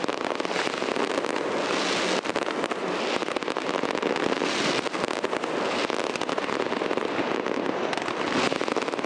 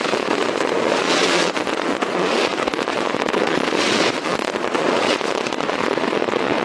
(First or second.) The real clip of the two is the first